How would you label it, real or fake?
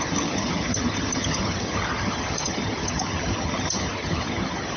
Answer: fake